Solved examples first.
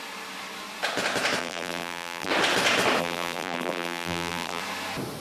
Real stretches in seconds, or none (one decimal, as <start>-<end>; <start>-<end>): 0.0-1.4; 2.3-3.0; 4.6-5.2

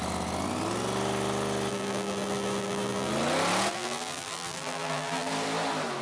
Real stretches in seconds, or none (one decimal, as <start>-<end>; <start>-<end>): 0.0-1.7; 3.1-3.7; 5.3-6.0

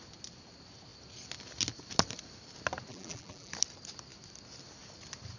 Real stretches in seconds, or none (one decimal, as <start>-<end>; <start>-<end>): 0.0-2.9; 3.5-5.4